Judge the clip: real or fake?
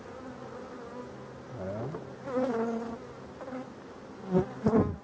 real